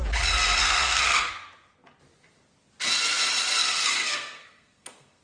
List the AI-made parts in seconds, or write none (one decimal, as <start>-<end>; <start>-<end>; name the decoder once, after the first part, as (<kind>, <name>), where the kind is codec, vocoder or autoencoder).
0.6-1.3 (codec, SNAC); 3.6-5.2